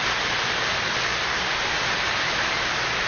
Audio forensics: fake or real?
fake